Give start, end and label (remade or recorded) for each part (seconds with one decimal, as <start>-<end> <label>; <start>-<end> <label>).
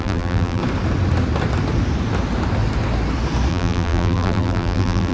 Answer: 0.0-0.6 remade; 0.6-3.5 recorded; 3.5-5.1 remade